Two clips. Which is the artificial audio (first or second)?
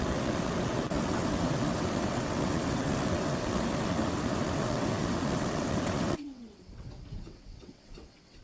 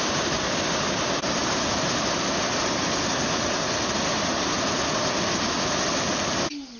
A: first